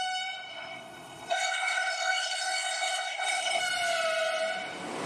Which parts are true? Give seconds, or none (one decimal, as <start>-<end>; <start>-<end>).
0.0-0.5; 3.6-5.1